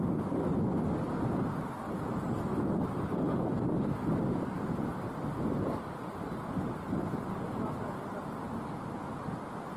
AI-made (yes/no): no